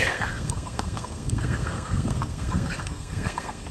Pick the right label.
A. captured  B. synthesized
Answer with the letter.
B